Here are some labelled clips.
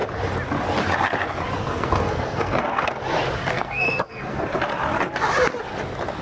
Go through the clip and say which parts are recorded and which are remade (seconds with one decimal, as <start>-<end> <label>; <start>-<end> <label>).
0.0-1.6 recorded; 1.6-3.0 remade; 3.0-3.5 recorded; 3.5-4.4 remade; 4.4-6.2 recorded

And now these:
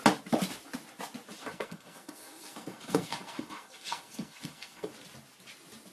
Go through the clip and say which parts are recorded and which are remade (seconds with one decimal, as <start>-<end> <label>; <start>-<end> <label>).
0.0-1.4 recorded; 1.4-4.9 remade; 4.9-5.9 recorded

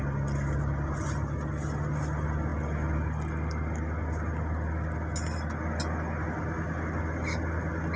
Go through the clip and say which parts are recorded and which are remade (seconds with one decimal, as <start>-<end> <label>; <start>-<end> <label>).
0.0-8.0 recorded

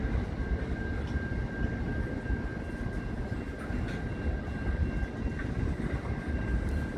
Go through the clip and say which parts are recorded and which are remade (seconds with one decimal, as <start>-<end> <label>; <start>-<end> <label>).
0.0-7.0 recorded